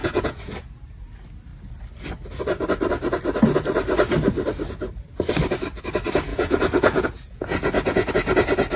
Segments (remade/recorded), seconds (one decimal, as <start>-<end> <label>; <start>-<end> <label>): 0.0-0.8 remade; 0.8-6.3 recorded; 6.3-8.1 remade; 8.1-8.8 recorded